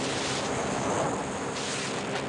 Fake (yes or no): no